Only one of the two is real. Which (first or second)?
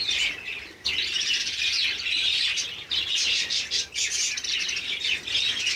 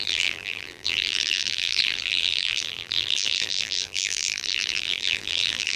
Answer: first